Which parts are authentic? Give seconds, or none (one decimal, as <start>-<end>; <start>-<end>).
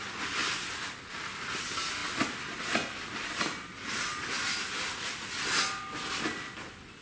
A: 0.0-7.0